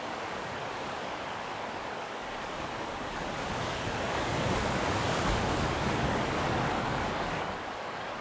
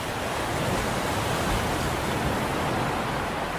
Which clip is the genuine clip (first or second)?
second